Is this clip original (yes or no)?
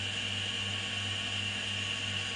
yes